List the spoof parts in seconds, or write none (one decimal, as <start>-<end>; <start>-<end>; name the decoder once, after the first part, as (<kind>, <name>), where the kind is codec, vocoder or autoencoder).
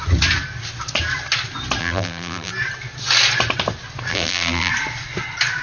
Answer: 1.8-2.5 (vocoder, BigVGAN v2); 4.1-4.7